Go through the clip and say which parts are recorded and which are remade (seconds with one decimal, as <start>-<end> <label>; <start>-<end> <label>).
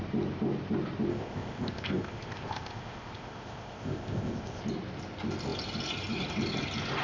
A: 0.0-1.1 recorded; 1.1-4.6 remade; 4.6-7.0 recorded